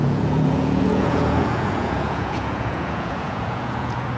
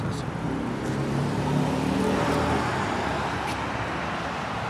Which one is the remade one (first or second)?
first